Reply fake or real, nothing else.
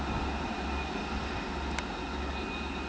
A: real